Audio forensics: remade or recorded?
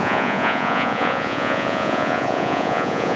remade